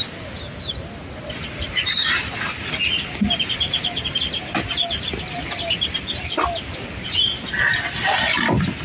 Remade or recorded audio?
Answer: recorded